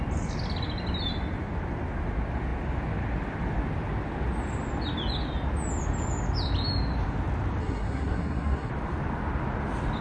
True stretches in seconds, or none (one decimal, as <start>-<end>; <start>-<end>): 0.0-7.6; 8.7-10.0